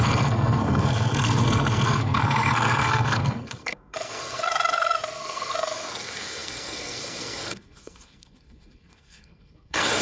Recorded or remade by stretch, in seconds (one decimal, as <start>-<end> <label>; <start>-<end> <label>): 0.0-10.0 remade